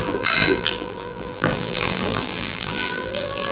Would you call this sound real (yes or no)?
no